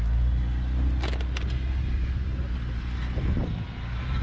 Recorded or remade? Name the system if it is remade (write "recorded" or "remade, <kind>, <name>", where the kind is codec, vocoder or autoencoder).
recorded